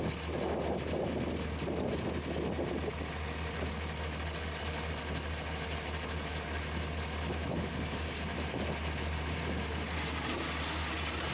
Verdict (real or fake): real